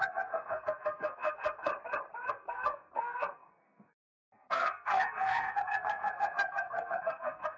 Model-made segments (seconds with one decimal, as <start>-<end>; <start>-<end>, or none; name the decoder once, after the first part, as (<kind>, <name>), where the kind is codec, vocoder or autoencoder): 0.0-1.7 (codec, SNAC); 2.3-7.6